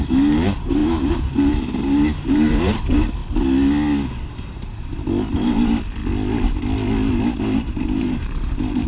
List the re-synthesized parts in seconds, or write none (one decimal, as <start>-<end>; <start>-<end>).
0.0-3.2; 4.3-6.0; 7.4-8.9